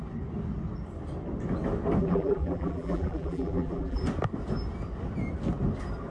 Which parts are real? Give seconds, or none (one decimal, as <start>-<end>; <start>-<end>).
0.0-2.0; 4.0-6.1